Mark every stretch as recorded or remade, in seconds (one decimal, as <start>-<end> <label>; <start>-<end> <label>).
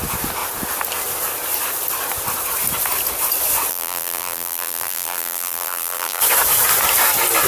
0.0-3.7 recorded; 3.7-6.2 remade; 6.2-7.5 recorded